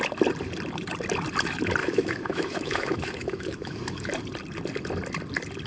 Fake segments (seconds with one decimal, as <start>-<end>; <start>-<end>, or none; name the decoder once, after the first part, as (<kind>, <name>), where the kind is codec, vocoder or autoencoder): 1.8-3.8 (autoencoder, DAC-VAE)